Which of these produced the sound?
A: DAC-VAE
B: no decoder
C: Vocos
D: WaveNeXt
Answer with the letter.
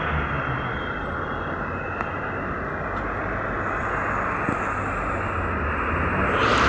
B